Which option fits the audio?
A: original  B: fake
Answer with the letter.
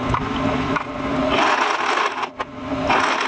A